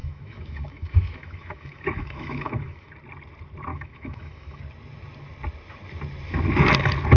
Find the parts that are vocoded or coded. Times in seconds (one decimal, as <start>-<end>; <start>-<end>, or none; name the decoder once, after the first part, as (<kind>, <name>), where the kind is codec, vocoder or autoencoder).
0.0-2.9 (autoencoder, DAC-VAE); 3.7-4.6